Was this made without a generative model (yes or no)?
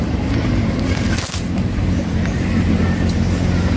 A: no